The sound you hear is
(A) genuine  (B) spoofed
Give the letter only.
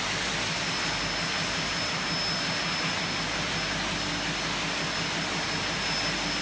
A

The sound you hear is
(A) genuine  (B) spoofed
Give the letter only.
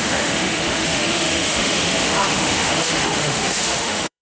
B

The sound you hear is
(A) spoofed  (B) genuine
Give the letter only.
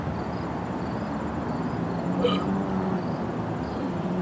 B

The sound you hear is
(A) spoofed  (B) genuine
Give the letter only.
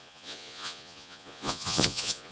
A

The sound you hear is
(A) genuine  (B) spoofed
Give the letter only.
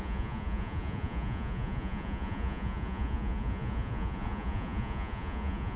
B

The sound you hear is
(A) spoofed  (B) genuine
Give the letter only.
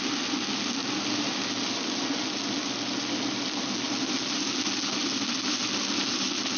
B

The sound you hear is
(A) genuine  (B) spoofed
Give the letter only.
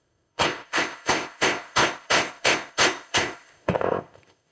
B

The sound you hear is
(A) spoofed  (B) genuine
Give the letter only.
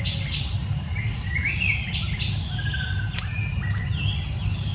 B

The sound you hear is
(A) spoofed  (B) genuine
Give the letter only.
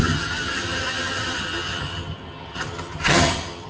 A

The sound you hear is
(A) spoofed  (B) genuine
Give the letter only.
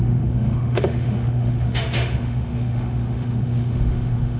A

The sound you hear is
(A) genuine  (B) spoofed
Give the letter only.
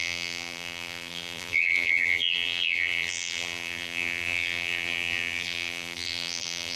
B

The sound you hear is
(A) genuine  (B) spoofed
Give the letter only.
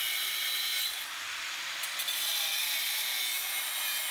A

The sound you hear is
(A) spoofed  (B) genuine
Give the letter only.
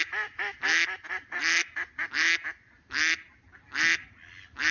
B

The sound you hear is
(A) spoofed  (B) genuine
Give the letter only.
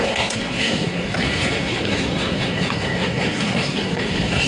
A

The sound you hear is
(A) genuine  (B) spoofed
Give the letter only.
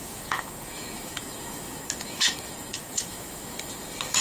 B